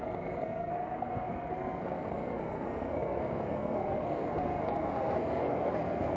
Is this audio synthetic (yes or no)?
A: yes